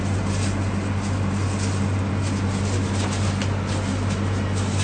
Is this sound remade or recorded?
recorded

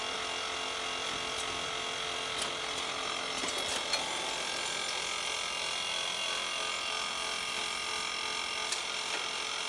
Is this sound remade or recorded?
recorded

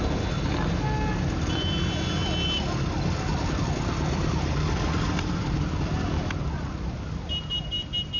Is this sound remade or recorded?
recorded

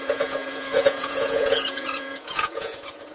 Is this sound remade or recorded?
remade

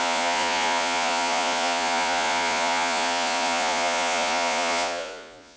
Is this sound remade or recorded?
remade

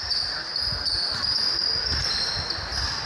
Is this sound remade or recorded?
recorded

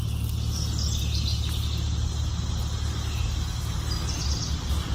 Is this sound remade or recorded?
recorded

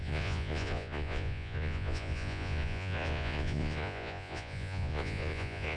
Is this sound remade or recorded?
remade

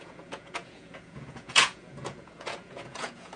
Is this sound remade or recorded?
remade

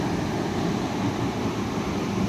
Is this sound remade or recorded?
recorded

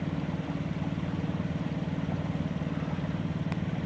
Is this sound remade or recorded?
recorded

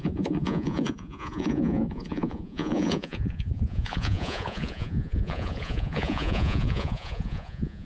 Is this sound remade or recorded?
remade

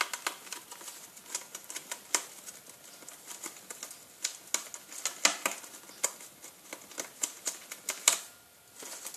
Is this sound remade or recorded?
recorded